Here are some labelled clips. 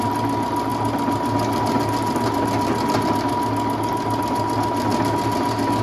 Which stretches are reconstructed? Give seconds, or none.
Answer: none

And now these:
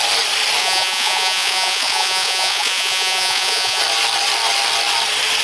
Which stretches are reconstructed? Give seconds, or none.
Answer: 0.6-3.8 (vocoder, Vocos)

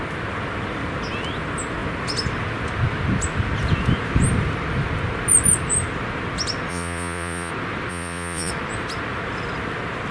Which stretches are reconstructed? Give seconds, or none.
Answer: 6.7-7.5 (vocoder, Vocos); 7.9-8.5

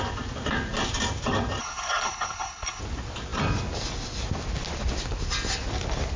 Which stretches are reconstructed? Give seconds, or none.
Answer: 1.6-2.8 (codec, HILCodec)

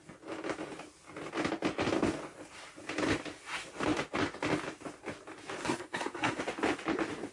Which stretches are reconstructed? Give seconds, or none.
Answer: 5.6-6.4 (codec, SNAC)

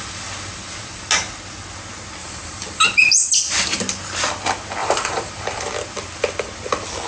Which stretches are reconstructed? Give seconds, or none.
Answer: 2.2-3.8 (vocoder, BigVGAN v2); 4.8-5.3

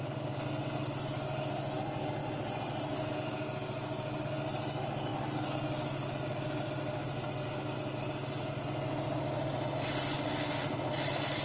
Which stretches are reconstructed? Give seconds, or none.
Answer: none